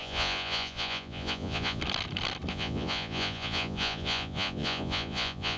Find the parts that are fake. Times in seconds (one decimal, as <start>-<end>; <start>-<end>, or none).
0.0-1.8; 2.5-5.6